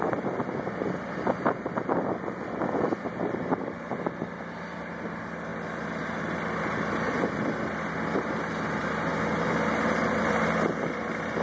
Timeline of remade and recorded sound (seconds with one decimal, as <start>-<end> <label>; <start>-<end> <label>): 0.0-11.4 recorded